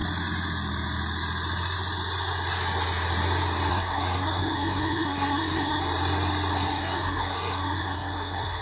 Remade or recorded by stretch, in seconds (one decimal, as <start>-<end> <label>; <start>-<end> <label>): 0.0-3.7 recorded; 3.7-5.8 remade; 5.8-6.5 recorded; 6.5-8.6 remade